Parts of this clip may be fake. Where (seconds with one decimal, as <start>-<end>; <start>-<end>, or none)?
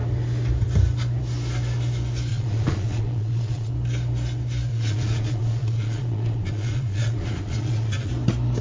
2.3-3.7; 4.7-8.1